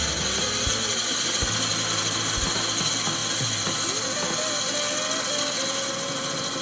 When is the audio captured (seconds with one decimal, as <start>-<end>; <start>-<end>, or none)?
0.0-1.7; 2.5-6.6